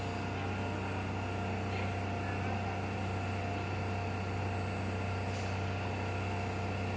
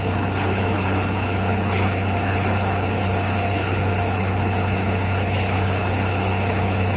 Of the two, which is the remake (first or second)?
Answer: second